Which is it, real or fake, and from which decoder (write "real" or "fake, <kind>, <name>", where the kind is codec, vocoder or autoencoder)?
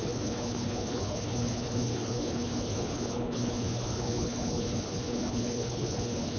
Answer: fake, codec, HILCodec